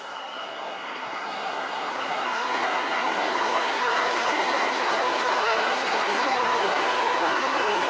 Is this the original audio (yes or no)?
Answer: no